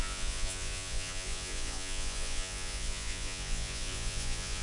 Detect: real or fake fake